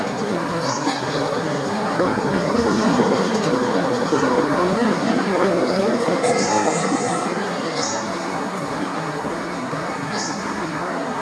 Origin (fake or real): fake